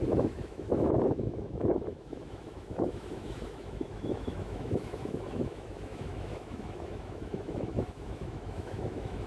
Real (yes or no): no